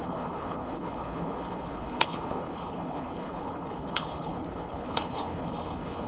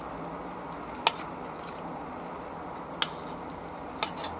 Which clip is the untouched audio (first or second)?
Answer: second